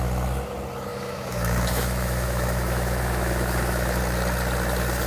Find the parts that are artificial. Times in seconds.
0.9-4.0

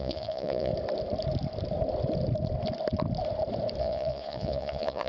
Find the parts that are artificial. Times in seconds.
0.0-0.7; 3.8-5.1